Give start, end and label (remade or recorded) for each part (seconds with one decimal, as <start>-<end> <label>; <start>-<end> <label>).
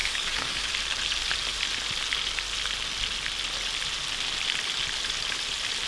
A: 0.0-0.7 remade; 0.7-5.9 recorded